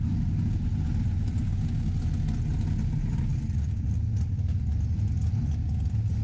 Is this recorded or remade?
recorded